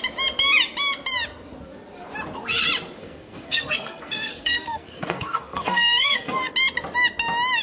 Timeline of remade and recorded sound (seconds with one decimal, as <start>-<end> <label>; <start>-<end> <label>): 0.0-3.0 recorded; 3.0-6.5 remade; 6.5-7.6 recorded